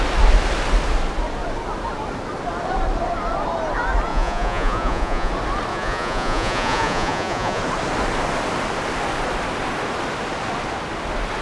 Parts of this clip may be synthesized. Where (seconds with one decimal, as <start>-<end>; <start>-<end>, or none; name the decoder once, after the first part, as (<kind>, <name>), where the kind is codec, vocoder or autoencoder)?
4.1-5.3 (vocoder, Vocos); 5.7-7.6